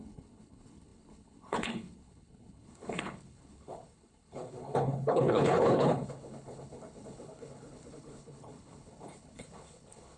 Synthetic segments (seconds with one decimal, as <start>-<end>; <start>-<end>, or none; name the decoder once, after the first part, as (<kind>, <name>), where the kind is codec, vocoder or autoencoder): 0.0-10.2 (codec, HILCodec)